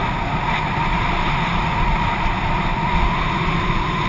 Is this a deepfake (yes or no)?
no